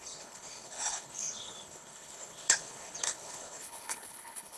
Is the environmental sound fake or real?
fake